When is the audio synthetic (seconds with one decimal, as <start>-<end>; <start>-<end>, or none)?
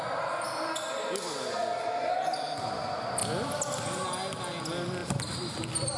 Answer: none